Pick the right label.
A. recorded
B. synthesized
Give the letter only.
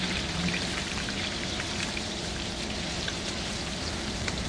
B